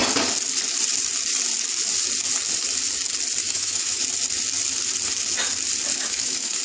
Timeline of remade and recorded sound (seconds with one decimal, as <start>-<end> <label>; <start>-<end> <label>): 0.0-3.4 recorded; 3.4-4.0 remade; 4.0-5.9 recorded; 5.9-6.6 remade